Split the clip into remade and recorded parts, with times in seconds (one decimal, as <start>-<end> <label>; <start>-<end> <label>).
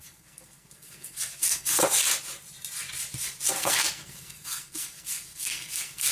0.0-1.8 remade; 1.8-3.5 recorded; 3.5-6.1 remade